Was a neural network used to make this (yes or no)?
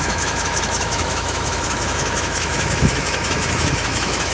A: yes